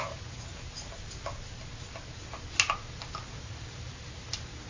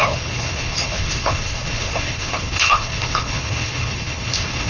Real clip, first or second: first